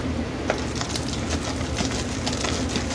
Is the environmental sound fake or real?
real